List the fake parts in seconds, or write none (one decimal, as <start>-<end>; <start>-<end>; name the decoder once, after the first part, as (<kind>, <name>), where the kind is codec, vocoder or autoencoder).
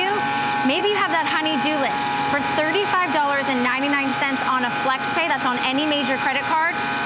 none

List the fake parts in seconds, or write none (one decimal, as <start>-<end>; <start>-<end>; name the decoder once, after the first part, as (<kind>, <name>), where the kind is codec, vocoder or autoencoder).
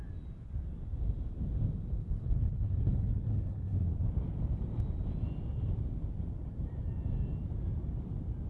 2.0-3.8 (codec, HILCodec)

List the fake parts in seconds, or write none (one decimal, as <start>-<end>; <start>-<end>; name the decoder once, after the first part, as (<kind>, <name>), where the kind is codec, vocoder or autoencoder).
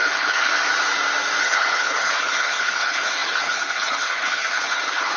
0.0-0.5 (codec, HILCodec); 1.4-5.2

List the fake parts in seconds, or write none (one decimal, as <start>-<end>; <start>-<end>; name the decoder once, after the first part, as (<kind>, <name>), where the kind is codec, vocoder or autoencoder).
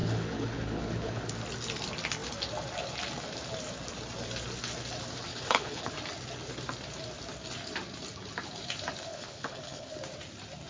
0.0-1.3 (codec, HILCodec); 5.3-5.9; 9.1-9.9